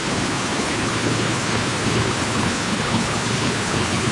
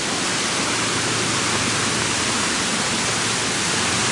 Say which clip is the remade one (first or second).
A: first